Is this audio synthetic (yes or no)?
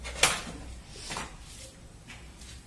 no